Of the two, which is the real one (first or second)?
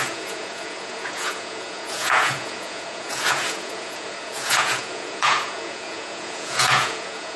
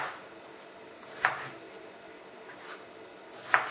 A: second